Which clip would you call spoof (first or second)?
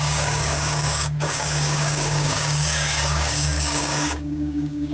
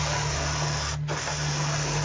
first